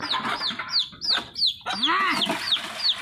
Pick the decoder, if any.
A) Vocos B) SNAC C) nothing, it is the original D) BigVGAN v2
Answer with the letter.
C